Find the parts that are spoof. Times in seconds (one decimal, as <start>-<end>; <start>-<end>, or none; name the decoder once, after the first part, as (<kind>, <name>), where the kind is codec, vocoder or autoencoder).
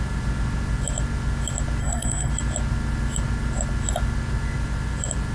1.8-2.3 (codec, SNAC)